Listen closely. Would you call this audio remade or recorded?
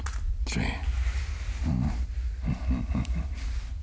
recorded